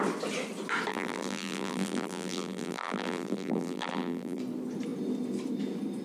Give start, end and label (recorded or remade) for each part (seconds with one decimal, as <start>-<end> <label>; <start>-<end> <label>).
0.0-0.9 recorded; 0.9-4.4 remade; 4.4-6.0 recorded